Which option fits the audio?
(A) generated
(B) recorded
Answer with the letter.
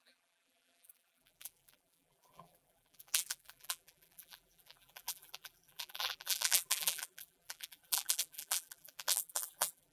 A